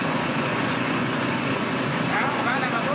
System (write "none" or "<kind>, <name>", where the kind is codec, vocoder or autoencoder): vocoder, Vocos